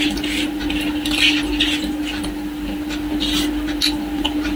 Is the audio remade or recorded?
recorded